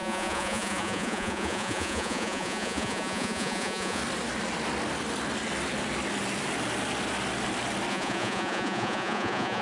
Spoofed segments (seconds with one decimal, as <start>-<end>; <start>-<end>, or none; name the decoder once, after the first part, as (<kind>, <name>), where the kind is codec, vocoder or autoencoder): 0.0-4.0 (vocoder, Vocos); 7.9-9.6